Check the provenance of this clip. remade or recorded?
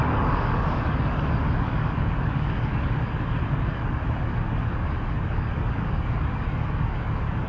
remade